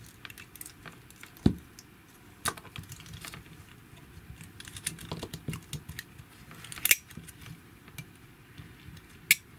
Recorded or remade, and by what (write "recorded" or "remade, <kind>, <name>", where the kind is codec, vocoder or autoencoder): recorded